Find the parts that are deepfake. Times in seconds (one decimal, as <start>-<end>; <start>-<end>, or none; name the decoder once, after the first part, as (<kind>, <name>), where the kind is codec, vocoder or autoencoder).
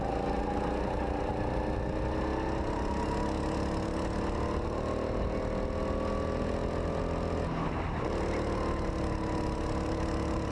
none